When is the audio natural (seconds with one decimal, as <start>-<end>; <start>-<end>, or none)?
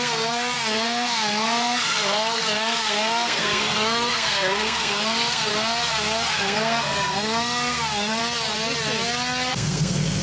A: 5.5-6.3; 8.2-9.5